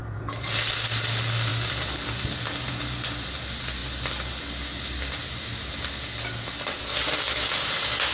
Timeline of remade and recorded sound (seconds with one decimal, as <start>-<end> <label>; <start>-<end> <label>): 0.0-0.7 remade; 0.7-1.5 recorded; 1.5-2.7 remade; 2.7-8.1 recorded